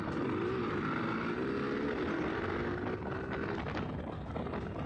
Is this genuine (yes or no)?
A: yes